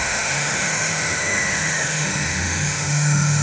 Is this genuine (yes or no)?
no